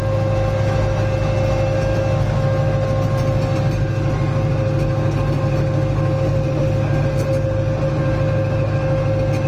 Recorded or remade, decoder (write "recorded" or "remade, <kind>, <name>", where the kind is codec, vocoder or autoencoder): recorded